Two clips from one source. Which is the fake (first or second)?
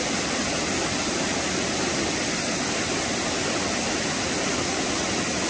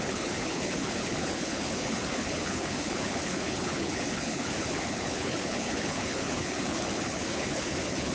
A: second